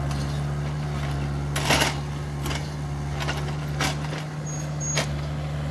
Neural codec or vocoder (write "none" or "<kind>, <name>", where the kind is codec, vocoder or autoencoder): none